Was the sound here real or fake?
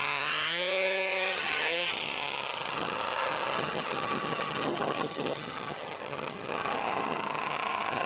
fake